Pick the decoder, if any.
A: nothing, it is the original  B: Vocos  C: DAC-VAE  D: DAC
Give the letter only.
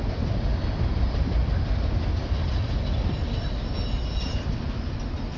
A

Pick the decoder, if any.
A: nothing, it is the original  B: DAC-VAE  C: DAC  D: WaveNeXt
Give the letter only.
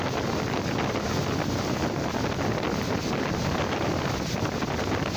A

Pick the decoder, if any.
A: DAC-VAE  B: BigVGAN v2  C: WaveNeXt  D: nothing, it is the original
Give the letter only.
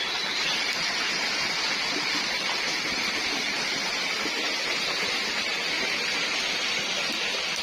D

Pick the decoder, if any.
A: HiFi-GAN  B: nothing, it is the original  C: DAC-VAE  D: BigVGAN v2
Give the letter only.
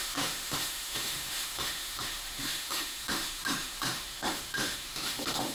C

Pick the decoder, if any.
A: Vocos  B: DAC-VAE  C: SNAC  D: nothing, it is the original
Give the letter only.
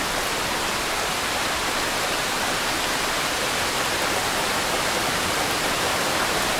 D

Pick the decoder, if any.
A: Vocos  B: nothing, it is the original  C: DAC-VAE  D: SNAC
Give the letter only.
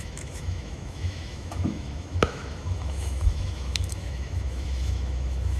C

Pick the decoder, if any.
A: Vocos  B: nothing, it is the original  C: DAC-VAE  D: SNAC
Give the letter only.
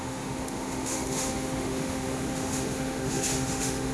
C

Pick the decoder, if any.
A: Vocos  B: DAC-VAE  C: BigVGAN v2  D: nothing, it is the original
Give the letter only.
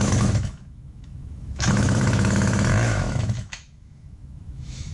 B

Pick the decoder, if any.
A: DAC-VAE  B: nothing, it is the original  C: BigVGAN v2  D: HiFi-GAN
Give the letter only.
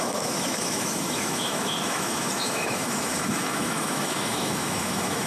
A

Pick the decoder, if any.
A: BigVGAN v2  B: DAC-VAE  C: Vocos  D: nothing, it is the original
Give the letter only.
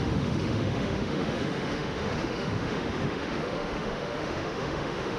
B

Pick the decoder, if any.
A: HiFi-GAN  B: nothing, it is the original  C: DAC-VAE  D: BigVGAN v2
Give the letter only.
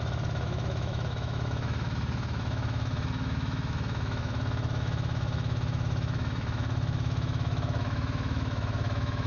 C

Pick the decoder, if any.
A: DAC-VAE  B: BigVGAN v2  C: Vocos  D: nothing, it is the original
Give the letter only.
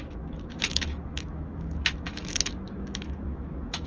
A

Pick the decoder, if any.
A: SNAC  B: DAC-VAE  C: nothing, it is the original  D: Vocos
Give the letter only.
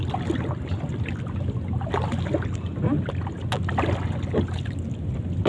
C